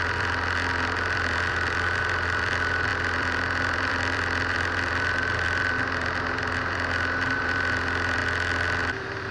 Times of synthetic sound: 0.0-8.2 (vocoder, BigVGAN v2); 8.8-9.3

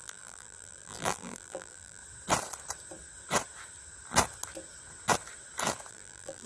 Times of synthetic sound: 0.0-2.0 (vocoder, BigVGAN v2); 5.9-6.5

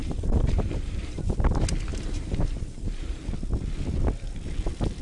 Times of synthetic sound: 0.0-1.2 (vocoder, BigVGAN v2); 1.9-3.3